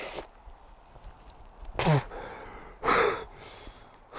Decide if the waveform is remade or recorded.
recorded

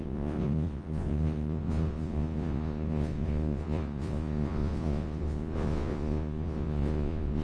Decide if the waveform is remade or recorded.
remade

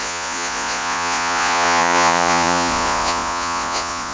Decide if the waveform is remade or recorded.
remade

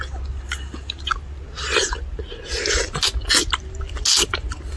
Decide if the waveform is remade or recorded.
recorded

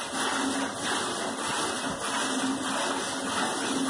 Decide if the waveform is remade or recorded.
recorded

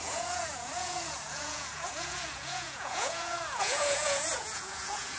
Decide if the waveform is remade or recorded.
remade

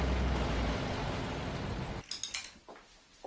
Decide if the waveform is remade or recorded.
recorded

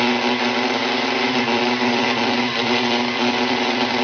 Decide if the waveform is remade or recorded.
recorded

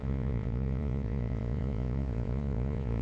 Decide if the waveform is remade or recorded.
remade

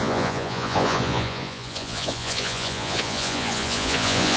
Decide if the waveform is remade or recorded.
remade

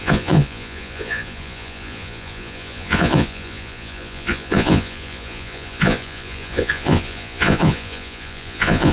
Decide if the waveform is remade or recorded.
remade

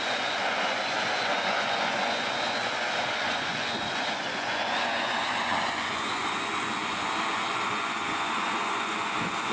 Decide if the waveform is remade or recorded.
remade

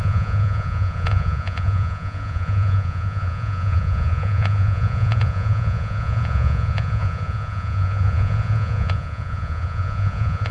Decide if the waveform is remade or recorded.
remade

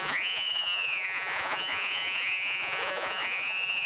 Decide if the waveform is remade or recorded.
remade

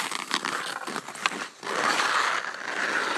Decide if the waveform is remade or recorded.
recorded